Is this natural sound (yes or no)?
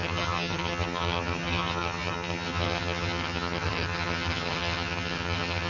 no